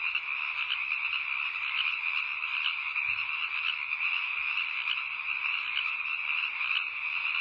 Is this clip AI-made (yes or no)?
no